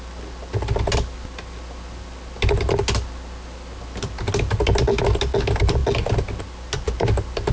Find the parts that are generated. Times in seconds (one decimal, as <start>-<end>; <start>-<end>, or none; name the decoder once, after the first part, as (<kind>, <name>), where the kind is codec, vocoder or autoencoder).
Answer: none